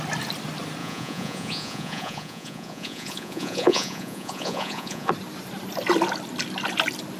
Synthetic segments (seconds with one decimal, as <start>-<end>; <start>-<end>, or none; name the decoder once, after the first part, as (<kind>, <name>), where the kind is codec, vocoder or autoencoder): 0.8-5.1 (vocoder, Vocos)